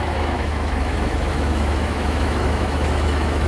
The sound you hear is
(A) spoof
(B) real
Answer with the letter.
A